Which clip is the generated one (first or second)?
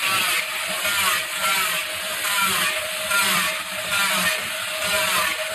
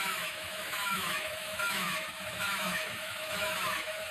second